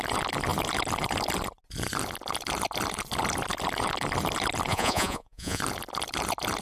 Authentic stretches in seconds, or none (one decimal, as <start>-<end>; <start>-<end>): 0.0-4.7; 5.6-6.6